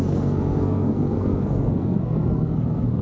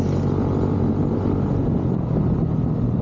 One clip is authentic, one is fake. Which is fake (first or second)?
first